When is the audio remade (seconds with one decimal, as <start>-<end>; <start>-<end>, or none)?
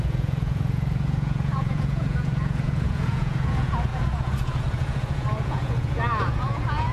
0.0-6.9